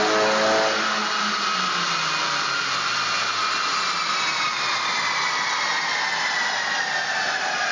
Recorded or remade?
recorded